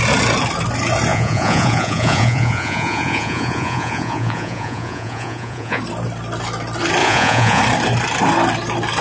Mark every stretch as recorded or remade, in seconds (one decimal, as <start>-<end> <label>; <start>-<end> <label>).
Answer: 0.0-1.1 recorded; 1.1-5.8 remade; 5.8-7.0 recorded; 7.0-7.6 remade; 7.6-9.0 recorded

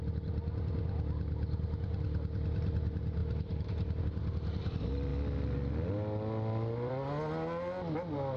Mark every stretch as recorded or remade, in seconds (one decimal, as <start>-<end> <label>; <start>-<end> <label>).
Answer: 0.0-3.2 recorded; 3.2-4.0 remade; 4.0-5.1 recorded; 5.1-6.9 remade; 6.9-8.4 recorded

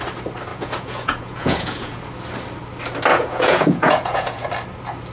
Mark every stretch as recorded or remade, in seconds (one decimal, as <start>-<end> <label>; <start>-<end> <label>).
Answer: 0.0-0.5 recorded; 0.5-2.0 remade; 2.0-3.1 recorded; 3.1-4.5 remade; 4.5-5.1 recorded

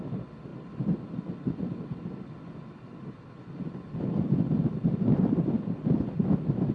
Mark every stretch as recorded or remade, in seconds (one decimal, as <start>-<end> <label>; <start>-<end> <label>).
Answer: 0.0-6.7 recorded

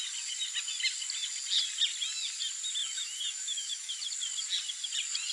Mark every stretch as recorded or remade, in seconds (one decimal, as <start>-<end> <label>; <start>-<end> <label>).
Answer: 0.0-2.8 recorded; 2.8-3.9 remade; 3.9-5.3 recorded